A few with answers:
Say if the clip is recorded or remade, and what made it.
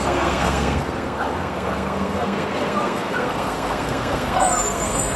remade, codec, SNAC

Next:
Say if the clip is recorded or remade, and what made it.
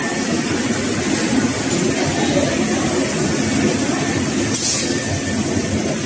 recorded